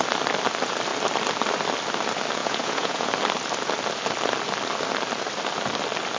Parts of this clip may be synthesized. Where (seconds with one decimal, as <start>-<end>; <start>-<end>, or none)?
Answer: 2.4-3.1